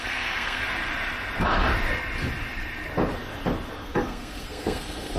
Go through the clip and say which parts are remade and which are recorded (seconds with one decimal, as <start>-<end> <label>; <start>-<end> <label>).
0.0-0.6 remade; 0.6-3.7 recorded; 3.7-5.2 remade